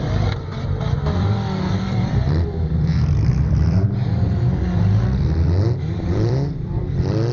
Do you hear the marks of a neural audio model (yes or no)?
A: yes